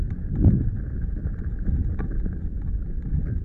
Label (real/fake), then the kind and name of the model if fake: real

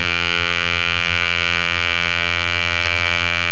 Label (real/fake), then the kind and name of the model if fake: fake, vocoder, BigVGAN v2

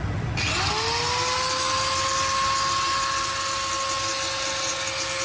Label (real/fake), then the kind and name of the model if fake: real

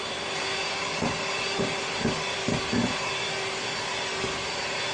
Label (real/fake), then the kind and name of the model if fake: real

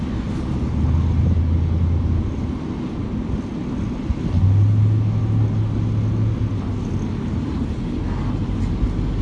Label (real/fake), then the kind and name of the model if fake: real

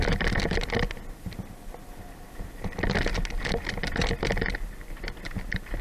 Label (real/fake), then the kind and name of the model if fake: real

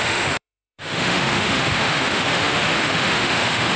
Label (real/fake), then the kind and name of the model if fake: fake, autoencoder, DAC-VAE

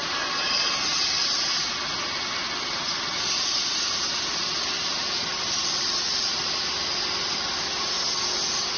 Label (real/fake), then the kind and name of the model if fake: real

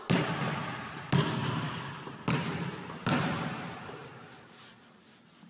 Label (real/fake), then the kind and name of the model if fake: real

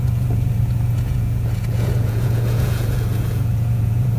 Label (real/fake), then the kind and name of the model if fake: fake, vocoder, Vocos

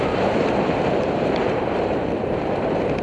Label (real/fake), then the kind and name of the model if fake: fake, vocoder, BigVGAN v2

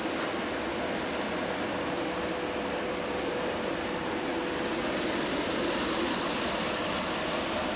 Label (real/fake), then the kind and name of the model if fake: real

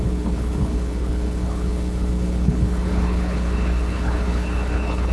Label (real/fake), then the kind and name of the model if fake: fake, codec, HILCodec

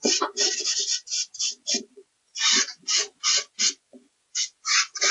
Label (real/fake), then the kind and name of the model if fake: fake, vocoder, Vocos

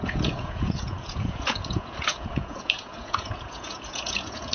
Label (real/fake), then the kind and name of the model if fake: fake, vocoder, Vocos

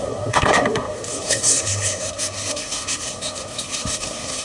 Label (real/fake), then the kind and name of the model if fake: fake, codec, SNAC